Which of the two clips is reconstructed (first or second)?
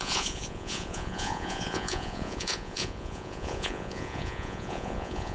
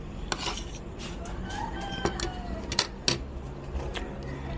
first